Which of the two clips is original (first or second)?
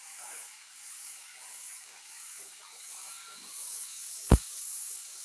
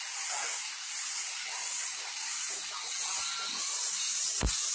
second